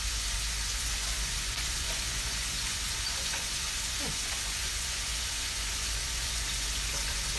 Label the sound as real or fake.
fake